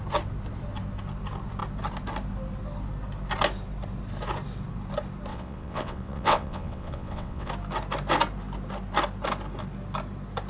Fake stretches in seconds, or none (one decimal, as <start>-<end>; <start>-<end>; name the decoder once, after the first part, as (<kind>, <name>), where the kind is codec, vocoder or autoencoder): 5.3-7.5 (vocoder, WaveNeXt)